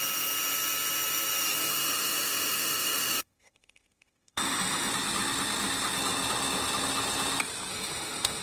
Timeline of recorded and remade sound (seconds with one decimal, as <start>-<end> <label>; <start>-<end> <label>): 0.0-1.7 recorded; 1.7-4.9 remade; 4.9-7.7 recorded; 7.7-8.4 remade